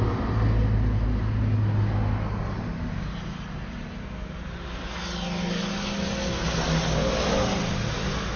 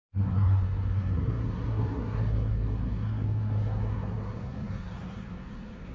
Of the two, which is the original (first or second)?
first